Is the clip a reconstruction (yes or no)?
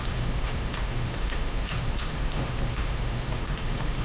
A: yes